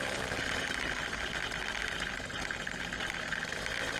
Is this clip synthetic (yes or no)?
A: no